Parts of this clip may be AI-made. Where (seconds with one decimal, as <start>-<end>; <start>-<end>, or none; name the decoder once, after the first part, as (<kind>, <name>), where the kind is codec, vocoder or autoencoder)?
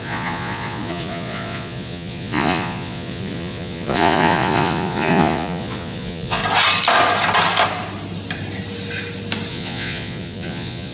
0.0-6.4 (vocoder, Vocos); 9.5-10.9